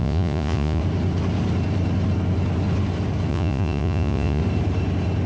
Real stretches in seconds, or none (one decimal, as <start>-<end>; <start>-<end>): 0.8-3.3; 4.4-5.3